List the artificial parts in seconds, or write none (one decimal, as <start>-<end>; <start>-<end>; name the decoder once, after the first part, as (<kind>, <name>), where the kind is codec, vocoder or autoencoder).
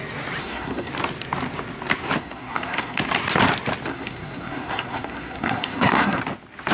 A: 0.4-0.9 (codec, SNAC); 2.2-3.0; 3.9-6.2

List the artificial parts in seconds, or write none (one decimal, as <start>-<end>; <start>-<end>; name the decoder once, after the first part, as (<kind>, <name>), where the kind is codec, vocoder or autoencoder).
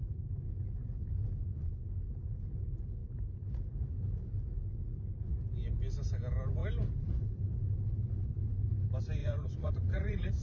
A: 1.4-2.0 (vocoder, Vocos); 9.2-10.4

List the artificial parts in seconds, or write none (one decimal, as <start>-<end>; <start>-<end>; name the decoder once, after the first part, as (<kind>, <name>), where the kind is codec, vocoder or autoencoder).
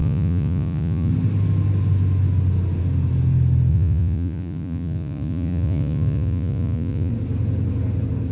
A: 0.0-1.1 (vocoder, Vocos); 3.7-7.1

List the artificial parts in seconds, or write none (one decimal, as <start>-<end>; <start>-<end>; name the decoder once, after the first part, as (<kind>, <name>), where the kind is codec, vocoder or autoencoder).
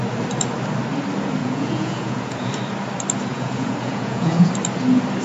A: 1.4-2.5 (vocoder, Vocos); 3.3-4.5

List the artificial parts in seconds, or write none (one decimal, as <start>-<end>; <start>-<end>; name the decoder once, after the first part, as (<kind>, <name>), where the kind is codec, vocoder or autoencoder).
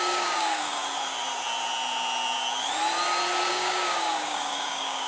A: 0.0-0.8 (codec, DAC); 3.5-5.1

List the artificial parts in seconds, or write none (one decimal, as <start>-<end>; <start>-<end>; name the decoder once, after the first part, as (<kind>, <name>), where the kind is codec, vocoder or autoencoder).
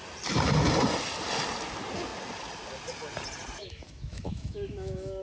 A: 3.6-5.2 (autoencoder, DAC-VAE)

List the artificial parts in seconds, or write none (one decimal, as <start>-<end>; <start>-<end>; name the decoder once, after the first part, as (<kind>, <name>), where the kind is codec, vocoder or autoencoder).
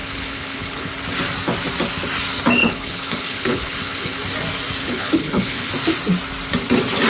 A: 0.0-0.9 (codec, HILCodec); 2.6-4.2; 4.8-5.7